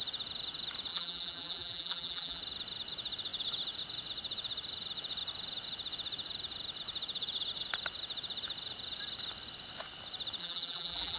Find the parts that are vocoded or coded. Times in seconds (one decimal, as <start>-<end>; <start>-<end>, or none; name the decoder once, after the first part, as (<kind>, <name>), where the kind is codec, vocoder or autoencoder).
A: 0.9-2.4 (vocoder, BigVGAN v2); 10.4-11.2

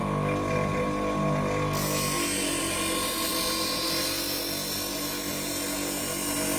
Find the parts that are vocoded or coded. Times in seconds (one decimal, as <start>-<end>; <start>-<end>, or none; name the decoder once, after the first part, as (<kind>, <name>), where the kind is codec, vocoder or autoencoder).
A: none

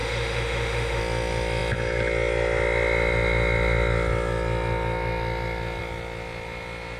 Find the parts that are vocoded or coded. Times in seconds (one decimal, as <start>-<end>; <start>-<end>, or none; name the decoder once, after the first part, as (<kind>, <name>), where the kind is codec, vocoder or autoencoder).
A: 0.0-1.0 (autoencoder, DAC-VAE)

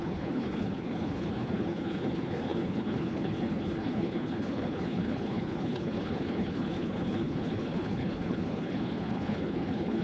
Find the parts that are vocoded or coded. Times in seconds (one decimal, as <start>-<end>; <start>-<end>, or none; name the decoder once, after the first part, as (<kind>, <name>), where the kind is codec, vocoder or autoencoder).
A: 0.0-10.0 (codec, HILCodec)